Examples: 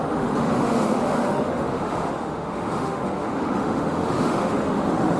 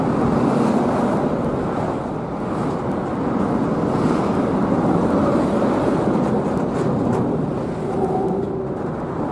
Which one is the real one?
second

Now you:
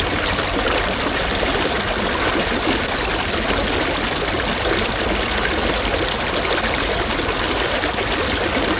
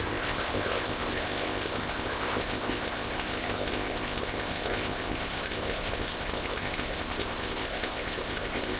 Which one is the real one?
first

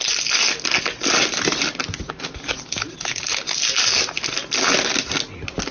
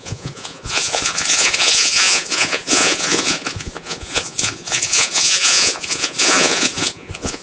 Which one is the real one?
first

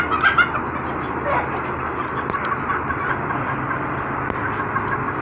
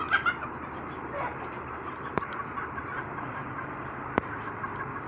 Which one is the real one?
first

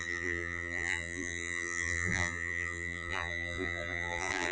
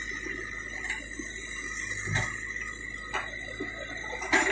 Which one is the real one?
second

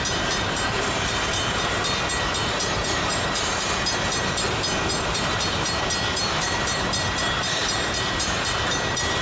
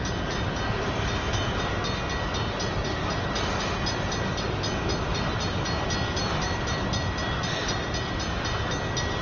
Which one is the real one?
second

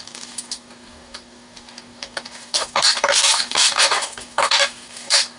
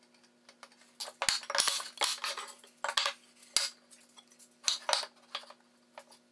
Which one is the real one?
second